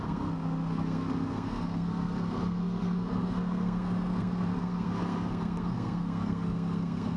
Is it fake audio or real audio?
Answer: fake